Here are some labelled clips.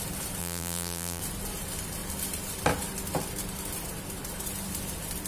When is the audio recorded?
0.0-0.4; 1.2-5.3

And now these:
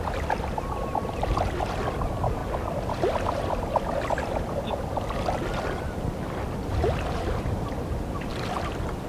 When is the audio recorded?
none

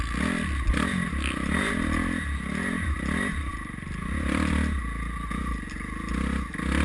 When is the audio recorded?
0.0-3.4; 4.5-6.8

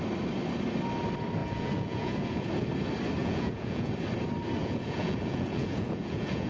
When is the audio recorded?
0.0-1.4; 2.5-3.2; 3.9-4.6

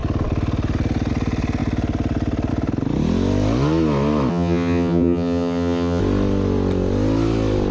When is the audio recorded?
0.0-4.3; 6.0-7.7

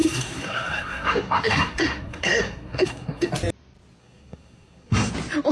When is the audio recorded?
3.3-4.0; 5.1-5.5